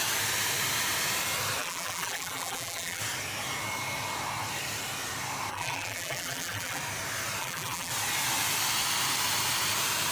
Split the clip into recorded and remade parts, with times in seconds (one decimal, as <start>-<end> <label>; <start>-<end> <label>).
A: 0.0-1.6 recorded; 1.6-3.0 remade; 3.0-5.5 recorded; 5.5-6.8 remade; 6.8-7.4 recorded; 7.4-7.9 remade; 7.9-10.1 recorded